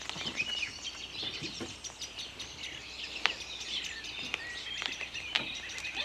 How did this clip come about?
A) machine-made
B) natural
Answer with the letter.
A